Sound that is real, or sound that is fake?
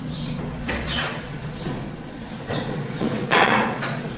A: fake